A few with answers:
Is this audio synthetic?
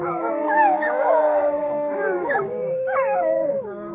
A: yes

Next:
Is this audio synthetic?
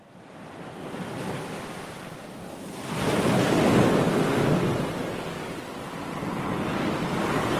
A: no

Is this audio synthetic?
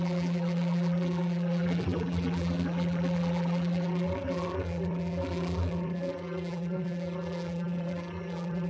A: yes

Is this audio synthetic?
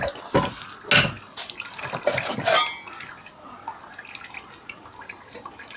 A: no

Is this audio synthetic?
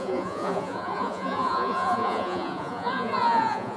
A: yes